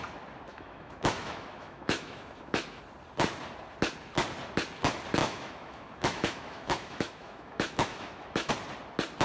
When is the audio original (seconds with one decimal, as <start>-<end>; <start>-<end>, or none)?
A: 0.0-0.5; 2.8-5.2; 8.5-9.2